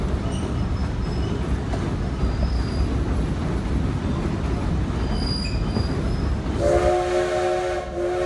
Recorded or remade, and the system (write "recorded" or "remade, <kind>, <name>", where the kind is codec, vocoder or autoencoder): recorded